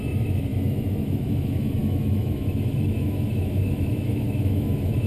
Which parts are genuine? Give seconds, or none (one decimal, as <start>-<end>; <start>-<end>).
none